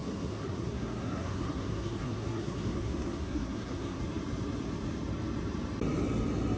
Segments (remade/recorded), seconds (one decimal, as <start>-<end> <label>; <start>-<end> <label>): 0.0-4.0 remade; 4.0-6.6 recorded